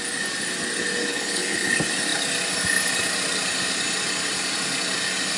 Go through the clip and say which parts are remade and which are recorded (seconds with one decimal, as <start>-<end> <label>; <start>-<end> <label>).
0.0-1.1 recorded; 1.1-1.7 remade; 1.7-5.4 recorded